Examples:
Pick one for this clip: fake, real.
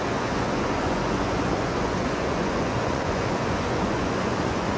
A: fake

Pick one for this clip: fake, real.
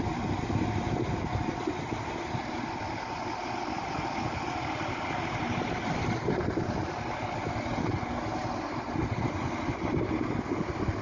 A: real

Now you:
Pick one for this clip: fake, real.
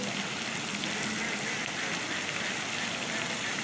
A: real